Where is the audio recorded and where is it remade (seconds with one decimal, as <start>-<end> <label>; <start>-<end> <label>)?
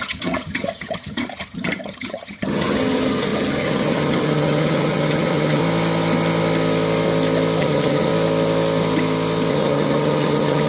0.0-5.6 remade; 5.6-7.6 recorded; 7.6-8.1 remade; 8.1-9.5 recorded; 9.5-10.7 remade